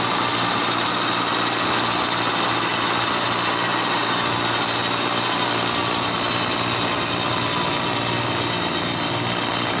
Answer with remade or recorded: recorded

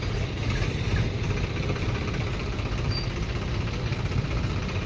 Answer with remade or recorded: recorded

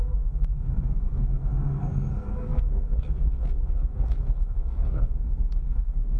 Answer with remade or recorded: remade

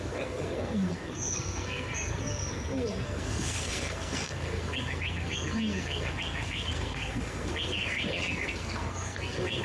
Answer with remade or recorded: remade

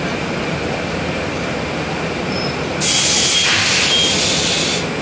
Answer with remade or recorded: recorded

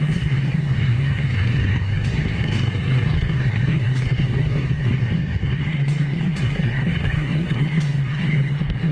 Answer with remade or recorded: remade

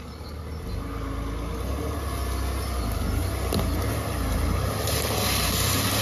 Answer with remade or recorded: recorded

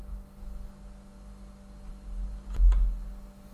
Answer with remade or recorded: recorded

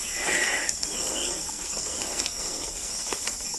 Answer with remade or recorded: remade